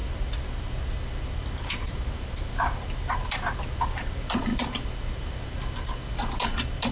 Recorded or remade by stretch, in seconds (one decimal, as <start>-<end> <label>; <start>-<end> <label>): 0.0-6.9 recorded